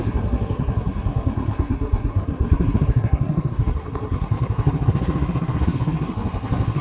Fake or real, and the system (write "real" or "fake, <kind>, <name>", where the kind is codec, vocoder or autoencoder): fake, codec, SNAC